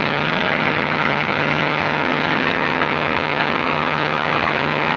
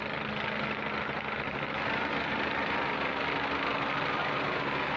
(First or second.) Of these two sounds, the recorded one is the second